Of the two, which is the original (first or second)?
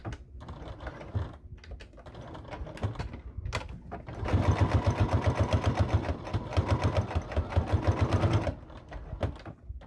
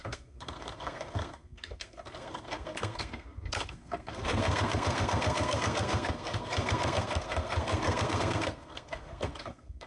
first